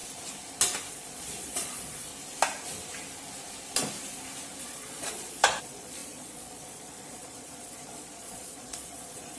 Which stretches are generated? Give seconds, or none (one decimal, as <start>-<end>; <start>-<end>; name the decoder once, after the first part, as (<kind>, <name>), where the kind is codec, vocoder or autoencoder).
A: 0.9-2.1 (vocoder, Vocos); 4.6-9.4